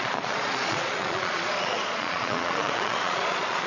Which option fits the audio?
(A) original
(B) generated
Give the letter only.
B